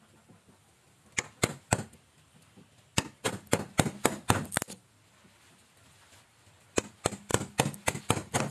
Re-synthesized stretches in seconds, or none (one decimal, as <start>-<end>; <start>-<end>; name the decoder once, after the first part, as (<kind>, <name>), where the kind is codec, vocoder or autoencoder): none